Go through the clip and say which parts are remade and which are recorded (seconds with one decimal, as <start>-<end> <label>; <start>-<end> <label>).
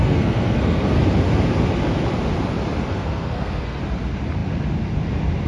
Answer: 0.0-1.0 remade; 1.0-2.9 recorded; 2.9-3.8 remade; 3.8-5.5 recorded